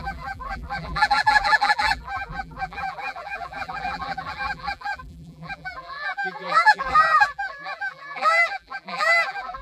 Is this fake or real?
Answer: fake